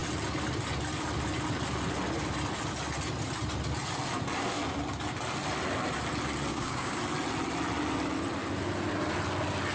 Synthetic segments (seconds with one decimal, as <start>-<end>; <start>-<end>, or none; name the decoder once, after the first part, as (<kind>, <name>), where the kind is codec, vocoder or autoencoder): 6.5-7.0 (codec, DAC)